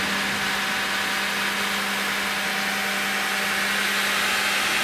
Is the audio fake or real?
real